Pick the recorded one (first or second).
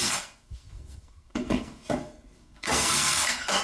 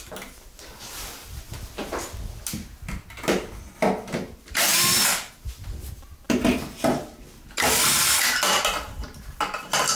second